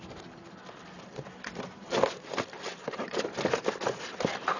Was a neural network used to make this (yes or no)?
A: yes